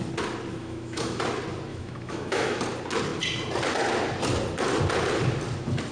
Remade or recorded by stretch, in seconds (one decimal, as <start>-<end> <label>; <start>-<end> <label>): 0.0-0.6 recorded; 0.6-1.2 remade; 1.2-1.7 recorded; 1.7-2.6 remade; 2.6-5.9 recorded

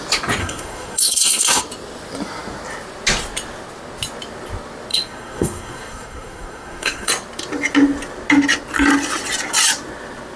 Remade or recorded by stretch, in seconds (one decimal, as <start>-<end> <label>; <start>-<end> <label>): 0.0-0.4 recorded; 0.4-1.6 remade; 1.6-4.9 recorded; 4.9-7.1 remade; 7.1-10.4 recorded

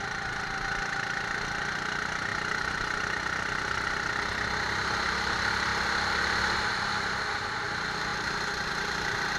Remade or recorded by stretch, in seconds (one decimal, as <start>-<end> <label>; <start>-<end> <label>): 0.0-9.4 recorded

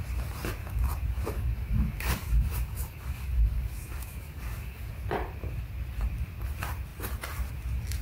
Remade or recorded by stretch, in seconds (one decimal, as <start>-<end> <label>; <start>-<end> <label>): 0.0-0.6 recorded; 0.6-4.9 remade; 4.9-8.0 recorded

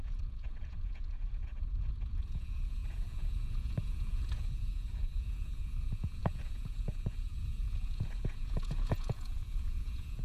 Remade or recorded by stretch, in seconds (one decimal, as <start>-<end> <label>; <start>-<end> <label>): 0.0-10.2 remade

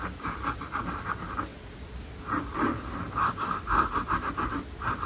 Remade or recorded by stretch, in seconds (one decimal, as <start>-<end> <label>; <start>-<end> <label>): 0.0-5.1 recorded

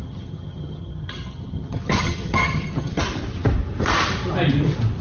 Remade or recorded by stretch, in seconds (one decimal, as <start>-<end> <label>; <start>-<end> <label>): 0.0-3.0 remade; 3.0-5.0 recorded